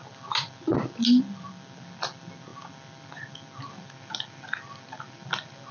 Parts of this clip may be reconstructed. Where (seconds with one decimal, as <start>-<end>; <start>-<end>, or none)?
none